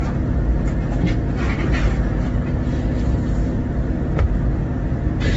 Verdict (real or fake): real